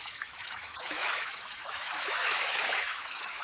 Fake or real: fake